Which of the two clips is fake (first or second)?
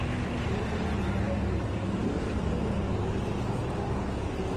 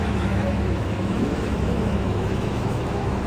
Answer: second